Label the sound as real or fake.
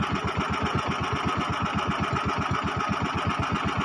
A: real